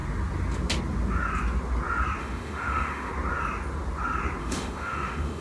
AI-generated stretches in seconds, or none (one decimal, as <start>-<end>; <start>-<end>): 2.2-3.1; 4.4-5.4